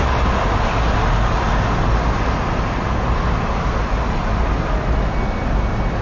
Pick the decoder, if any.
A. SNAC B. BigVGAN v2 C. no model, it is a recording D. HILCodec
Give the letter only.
C